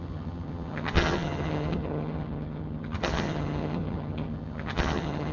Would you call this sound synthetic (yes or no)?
yes